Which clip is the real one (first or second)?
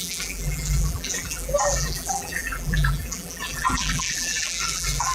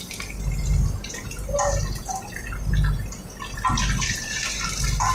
second